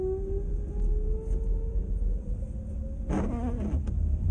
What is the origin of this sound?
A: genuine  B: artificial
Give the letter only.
A